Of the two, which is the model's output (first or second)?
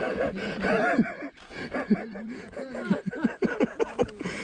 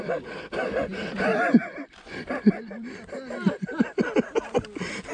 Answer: first